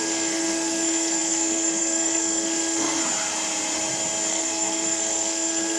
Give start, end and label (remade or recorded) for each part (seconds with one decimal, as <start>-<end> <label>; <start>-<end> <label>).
0.0-3.0 remade; 3.0-4.3 recorded; 4.3-5.8 remade